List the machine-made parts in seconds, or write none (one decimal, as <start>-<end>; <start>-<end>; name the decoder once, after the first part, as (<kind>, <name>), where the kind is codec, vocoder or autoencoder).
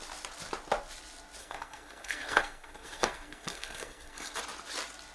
1.4-4.4 (codec, SNAC)